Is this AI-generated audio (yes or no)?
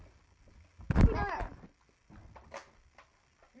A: no